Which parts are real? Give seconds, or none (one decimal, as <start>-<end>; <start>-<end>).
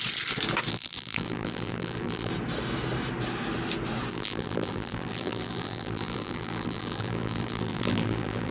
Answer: 0.0-0.7; 2.3-4.1